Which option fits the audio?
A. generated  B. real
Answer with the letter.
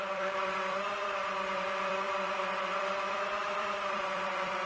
A